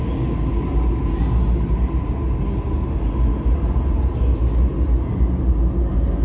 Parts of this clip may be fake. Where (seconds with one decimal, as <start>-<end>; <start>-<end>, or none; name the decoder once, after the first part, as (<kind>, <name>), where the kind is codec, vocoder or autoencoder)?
none